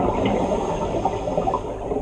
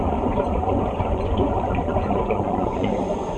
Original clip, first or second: first